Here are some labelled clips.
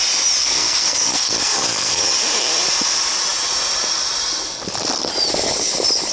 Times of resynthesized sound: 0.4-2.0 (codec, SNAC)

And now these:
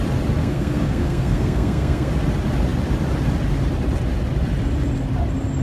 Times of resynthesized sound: 0.4-2.1 (codec, SNAC)

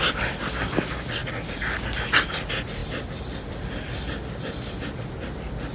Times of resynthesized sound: none

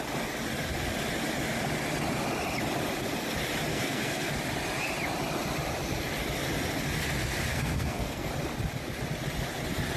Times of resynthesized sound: 3.7-4.3 (codec, SNAC); 7.5-8.3

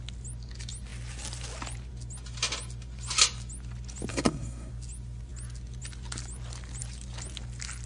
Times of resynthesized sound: 4.1-4.7 (codec, SNAC)

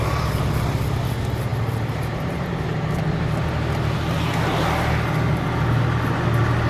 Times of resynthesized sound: none